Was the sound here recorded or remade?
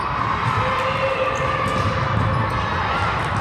recorded